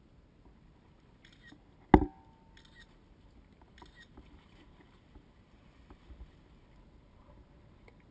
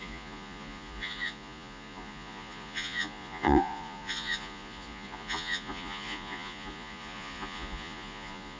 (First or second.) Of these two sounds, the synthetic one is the second